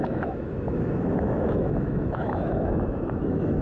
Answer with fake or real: fake